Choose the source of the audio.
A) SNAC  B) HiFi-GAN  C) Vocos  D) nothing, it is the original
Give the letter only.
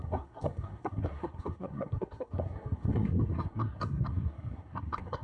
A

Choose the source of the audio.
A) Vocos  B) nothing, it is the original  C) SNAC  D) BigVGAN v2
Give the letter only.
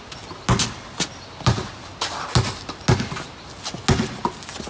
B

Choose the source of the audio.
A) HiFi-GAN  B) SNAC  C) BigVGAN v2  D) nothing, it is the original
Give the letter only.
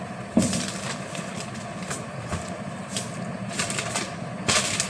D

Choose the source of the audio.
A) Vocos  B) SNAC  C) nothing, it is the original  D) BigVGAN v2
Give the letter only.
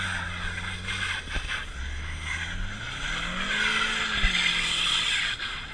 C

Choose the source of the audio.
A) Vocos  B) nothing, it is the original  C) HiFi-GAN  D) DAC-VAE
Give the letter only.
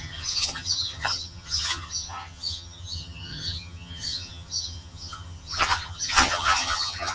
C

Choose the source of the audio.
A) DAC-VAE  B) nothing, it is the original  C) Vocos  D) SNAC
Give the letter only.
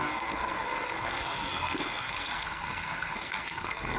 D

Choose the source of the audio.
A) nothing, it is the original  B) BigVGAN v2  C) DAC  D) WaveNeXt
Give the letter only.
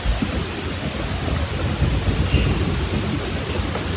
A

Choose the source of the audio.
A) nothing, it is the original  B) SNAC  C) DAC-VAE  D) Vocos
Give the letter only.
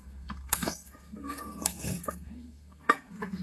B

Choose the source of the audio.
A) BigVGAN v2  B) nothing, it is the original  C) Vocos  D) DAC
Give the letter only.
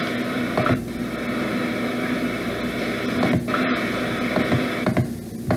B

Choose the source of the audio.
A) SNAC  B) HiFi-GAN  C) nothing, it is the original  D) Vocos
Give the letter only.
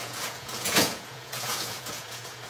D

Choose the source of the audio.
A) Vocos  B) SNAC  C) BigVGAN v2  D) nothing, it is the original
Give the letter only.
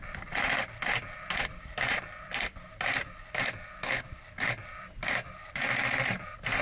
D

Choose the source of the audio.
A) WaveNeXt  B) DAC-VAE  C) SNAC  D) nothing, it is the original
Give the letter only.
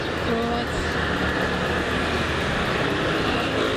D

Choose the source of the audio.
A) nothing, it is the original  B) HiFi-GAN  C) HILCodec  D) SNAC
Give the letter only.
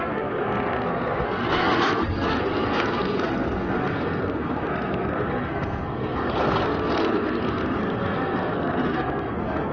D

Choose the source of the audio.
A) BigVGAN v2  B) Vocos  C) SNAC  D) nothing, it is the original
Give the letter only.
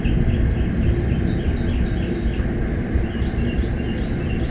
D